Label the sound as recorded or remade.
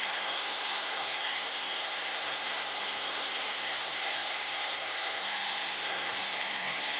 remade